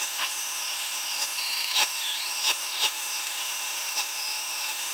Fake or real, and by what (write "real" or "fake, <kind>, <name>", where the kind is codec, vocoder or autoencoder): fake, autoencoder, DAC-VAE